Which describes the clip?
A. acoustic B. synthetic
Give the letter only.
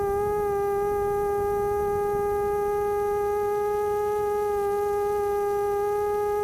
A